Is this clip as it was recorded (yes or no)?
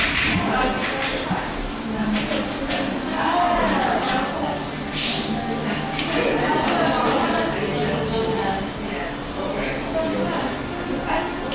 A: yes